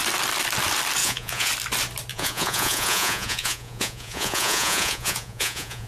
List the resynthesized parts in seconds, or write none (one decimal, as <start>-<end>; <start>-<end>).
1.0-1.5; 2.1-5.9